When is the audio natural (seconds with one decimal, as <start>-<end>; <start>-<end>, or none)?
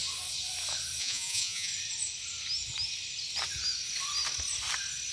0.0-1.0; 1.7-5.1